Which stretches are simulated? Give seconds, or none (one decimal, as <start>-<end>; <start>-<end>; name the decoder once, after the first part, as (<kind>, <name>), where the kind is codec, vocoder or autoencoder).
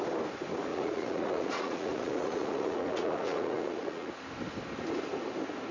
0.7-4.1 (vocoder, Vocos)